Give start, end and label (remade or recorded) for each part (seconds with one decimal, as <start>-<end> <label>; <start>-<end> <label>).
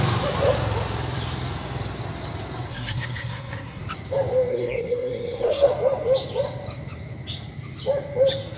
0.0-2.7 recorded; 2.7-3.8 remade; 3.8-4.5 recorded; 4.5-5.7 remade; 5.7-8.6 recorded